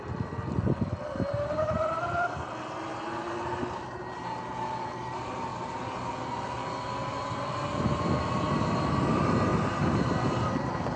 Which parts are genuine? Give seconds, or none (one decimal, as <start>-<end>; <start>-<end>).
0.0-11.0